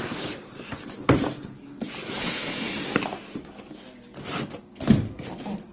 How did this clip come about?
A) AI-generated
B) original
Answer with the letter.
B